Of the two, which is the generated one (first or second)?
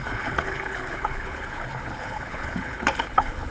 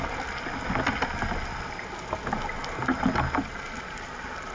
first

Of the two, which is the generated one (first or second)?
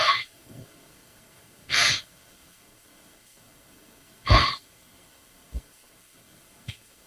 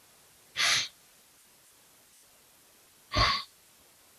first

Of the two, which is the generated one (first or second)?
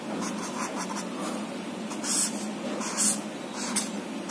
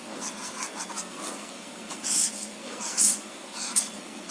second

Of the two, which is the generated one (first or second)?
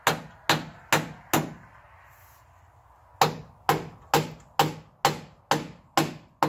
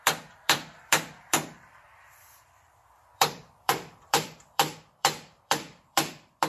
second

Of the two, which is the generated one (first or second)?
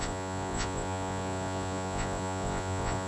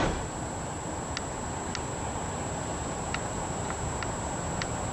first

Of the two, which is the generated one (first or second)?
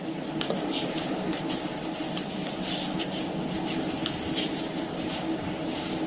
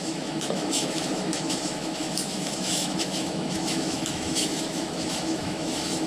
second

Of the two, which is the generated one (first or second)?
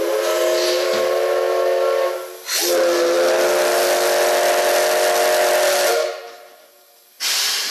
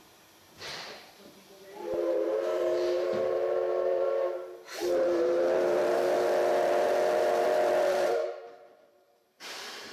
second